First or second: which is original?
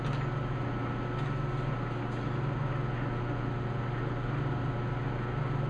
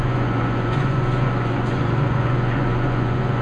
first